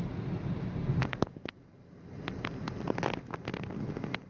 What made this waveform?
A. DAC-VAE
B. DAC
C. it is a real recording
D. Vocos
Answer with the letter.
C